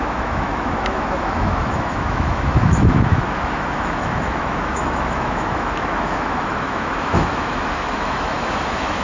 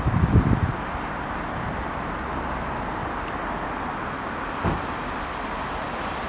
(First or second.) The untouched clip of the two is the second